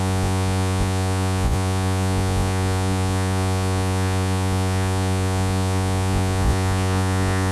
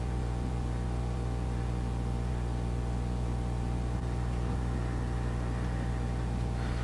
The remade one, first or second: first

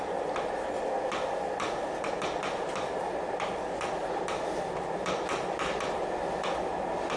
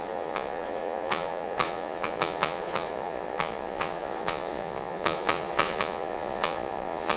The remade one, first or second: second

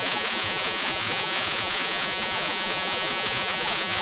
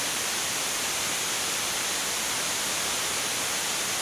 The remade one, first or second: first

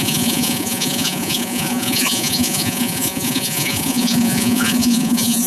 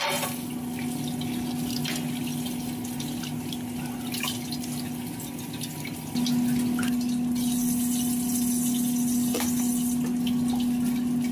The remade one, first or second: first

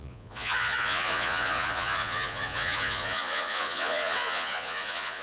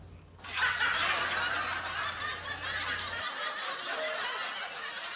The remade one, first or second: first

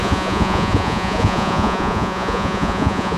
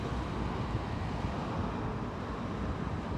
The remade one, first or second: first